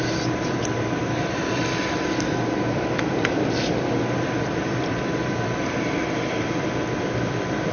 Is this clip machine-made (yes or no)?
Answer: yes